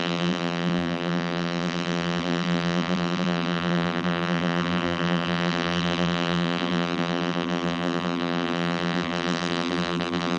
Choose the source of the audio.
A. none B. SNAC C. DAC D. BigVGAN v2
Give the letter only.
D